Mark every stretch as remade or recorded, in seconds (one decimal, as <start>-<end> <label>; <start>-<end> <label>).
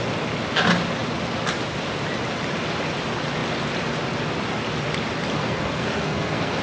0.0-5.4 recorded; 5.4-6.6 remade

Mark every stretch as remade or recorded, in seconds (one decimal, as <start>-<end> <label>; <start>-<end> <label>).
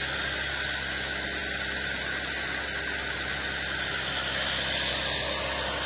0.0-5.9 recorded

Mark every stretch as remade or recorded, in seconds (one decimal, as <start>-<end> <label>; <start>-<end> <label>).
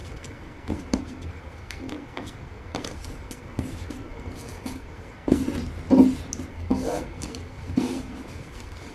0.0-5.4 remade; 5.4-6.5 recorded; 6.5-8.9 remade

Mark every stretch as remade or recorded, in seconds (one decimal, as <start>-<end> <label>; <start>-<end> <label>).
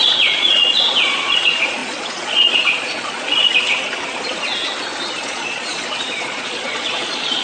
0.0-3.5 remade; 3.5-5.2 recorded; 5.2-7.4 remade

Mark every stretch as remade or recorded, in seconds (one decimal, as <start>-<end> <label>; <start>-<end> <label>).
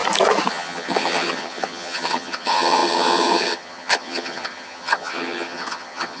0.0-0.5 recorded; 0.5-6.2 remade